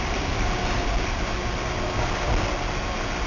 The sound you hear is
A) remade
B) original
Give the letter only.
B